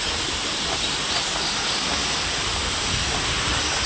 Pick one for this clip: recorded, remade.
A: recorded